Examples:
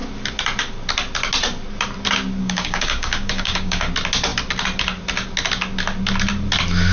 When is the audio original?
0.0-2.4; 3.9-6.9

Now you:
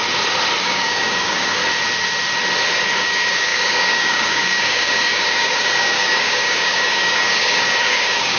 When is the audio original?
0.0-0.6; 1.6-3.0

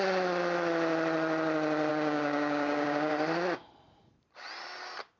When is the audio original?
0.0-1.9; 3.1-5.2

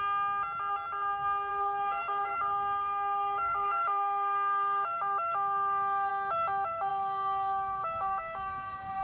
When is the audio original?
0.0-1.5; 6.1-6.9

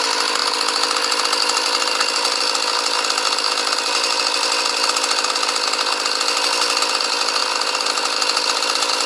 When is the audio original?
0.0-9.1

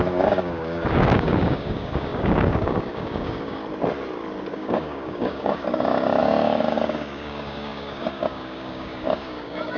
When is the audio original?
3.6-4.5